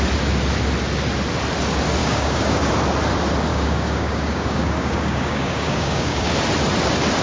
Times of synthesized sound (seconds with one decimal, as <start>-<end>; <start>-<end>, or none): 2.0-2.7; 3.5-6.3